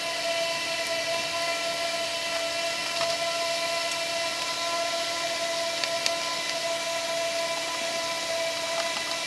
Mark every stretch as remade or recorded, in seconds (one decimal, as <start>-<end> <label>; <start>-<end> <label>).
0.0-9.3 recorded